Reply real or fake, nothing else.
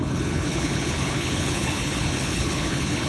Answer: fake